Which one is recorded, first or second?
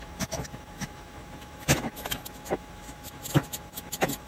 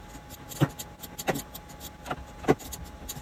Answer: second